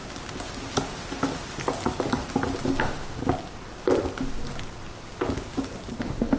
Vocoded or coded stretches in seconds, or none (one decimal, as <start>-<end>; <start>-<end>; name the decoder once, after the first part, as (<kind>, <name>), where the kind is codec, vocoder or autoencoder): 2.8-3.2 (autoencoder, DAC-VAE); 6.0-6.4